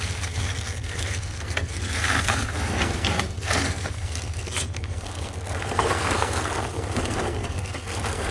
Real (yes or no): no